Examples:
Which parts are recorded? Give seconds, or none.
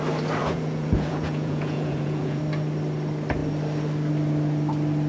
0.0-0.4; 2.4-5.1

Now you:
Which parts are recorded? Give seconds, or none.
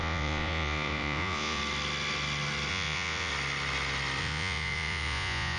1.6-2.7; 3.3-4.2